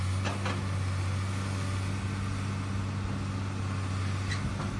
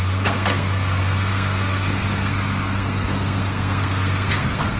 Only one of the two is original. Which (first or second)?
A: first